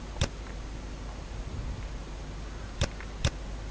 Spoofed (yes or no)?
no